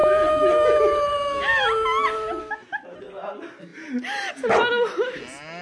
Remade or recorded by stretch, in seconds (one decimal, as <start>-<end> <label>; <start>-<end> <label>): 0.0-5.6 recorded